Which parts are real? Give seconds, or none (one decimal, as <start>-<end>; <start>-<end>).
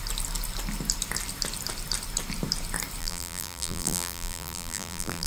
0.0-3.0